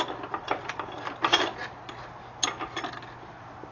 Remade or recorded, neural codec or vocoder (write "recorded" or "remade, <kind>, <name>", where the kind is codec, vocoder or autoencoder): recorded